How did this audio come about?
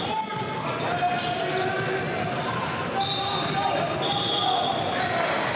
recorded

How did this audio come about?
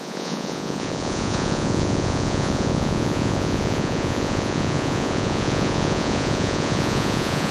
remade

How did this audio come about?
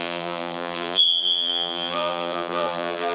remade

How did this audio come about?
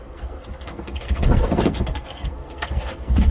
remade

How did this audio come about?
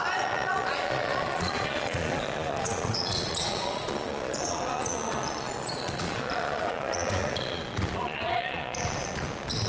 remade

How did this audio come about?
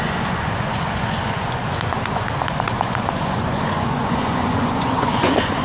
remade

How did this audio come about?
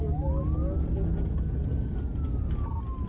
recorded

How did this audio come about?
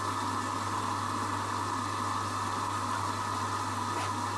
recorded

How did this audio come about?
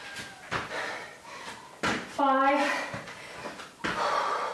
recorded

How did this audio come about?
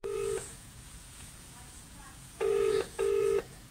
remade